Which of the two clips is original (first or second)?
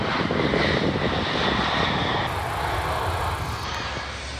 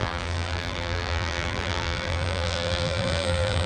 first